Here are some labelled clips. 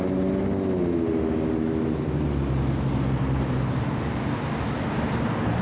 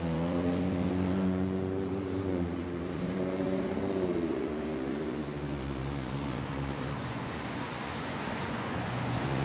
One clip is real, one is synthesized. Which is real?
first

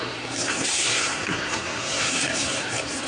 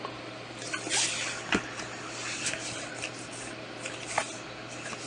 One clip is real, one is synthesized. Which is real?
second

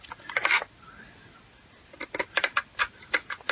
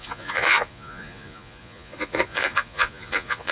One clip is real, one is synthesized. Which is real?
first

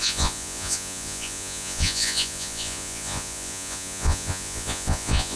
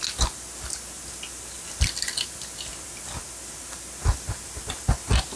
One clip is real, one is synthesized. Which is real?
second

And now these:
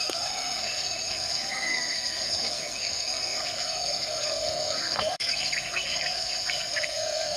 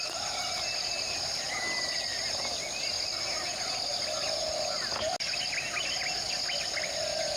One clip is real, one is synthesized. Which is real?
second